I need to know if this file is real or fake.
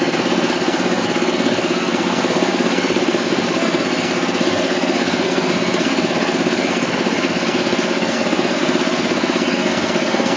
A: fake